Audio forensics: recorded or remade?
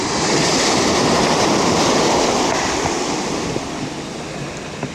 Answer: recorded